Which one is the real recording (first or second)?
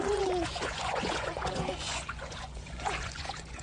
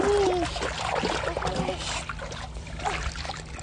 second